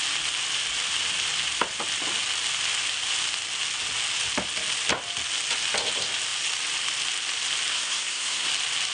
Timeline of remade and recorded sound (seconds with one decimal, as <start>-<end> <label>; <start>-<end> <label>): 0.0-7.7 recorded; 7.7-8.5 remade; 8.5-8.9 recorded